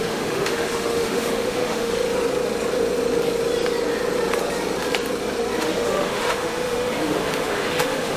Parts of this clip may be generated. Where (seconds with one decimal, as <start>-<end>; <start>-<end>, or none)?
0.0-1.9; 5.6-8.2